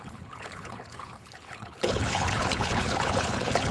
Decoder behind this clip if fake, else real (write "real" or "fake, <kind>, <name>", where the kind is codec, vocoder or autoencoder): fake, codec, HILCodec